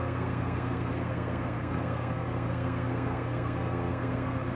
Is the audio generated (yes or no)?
yes